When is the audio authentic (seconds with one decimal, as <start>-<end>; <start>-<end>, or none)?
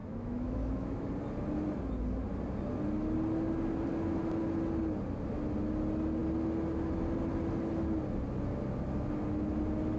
1.1-10.0